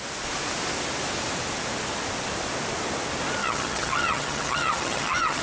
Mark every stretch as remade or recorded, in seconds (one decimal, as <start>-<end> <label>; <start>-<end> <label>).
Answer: 0.0-3.4 recorded; 3.4-5.4 remade